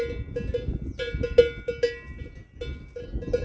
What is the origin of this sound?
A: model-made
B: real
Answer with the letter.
B